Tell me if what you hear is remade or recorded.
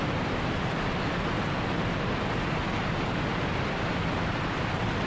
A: recorded